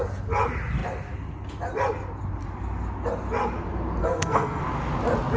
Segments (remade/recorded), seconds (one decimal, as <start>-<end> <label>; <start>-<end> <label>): 0.0-4.0 recorded; 4.0-4.6 remade; 4.6-5.4 recorded